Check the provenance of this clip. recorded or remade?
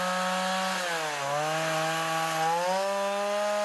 recorded